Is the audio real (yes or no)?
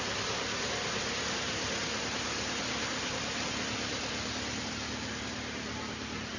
yes